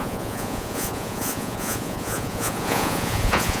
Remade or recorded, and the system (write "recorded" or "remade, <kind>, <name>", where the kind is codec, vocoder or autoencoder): remade, vocoder, Vocos